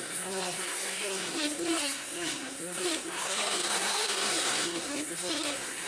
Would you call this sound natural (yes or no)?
no